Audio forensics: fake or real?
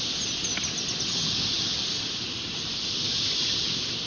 real